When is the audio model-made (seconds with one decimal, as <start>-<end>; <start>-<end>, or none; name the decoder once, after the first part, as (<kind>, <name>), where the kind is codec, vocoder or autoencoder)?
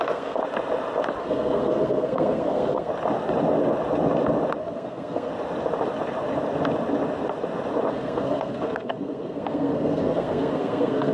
0.0-0.4 (codec, SNAC); 1.2-2.9; 4.6-5.3; 7.9-11.1